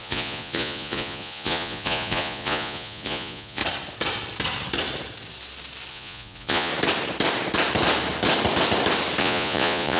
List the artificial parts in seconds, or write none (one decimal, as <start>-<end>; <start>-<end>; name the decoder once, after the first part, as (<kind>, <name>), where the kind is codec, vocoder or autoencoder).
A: 0.0-3.6 (vocoder, Vocos); 5.9-6.7; 9.2-10.0